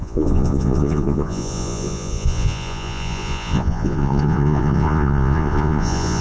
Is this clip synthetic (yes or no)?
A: yes